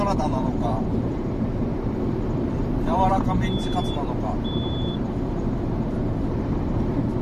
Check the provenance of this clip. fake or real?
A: fake